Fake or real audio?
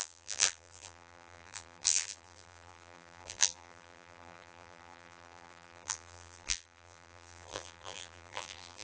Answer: fake